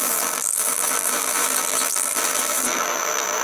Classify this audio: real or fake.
fake